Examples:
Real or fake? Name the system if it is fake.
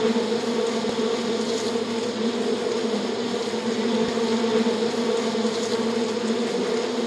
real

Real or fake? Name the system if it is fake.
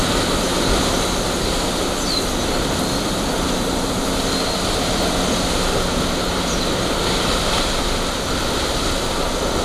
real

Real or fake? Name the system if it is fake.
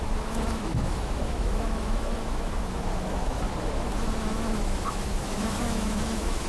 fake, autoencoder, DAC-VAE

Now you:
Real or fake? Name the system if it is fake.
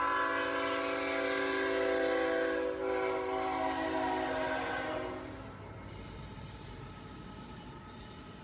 real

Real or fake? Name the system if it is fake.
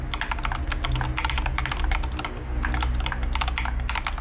real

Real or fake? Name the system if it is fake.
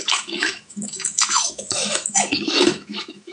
fake, autoencoder, DAC-VAE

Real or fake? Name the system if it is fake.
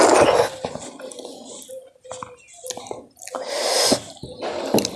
real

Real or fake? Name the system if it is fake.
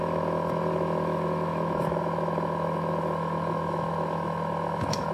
fake, autoencoder, DAC-VAE